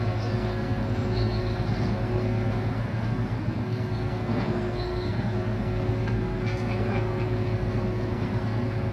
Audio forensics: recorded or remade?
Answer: remade